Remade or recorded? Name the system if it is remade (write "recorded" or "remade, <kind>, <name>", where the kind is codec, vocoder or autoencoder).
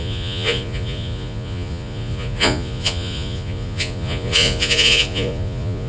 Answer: remade, vocoder, Vocos